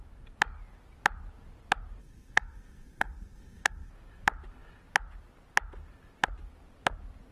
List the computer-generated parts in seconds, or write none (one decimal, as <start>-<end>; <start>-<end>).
2.0-3.9